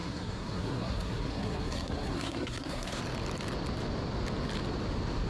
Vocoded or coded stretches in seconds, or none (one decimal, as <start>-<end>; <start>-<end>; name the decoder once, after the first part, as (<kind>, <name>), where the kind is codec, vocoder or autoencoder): 0.0-3.0 (codec, SNAC)